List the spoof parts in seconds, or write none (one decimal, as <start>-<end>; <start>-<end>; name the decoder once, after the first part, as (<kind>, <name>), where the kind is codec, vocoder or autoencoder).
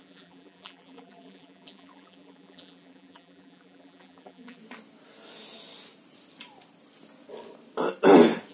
0.0-4.6 (vocoder, BigVGAN v2)